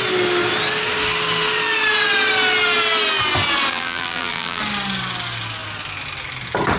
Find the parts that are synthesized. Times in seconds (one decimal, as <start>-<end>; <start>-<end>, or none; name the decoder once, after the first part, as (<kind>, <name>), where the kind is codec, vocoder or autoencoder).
3.7-4.6 (vocoder, BigVGAN v2)